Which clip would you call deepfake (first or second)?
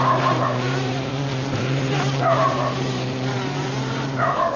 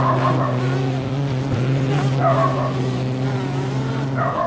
first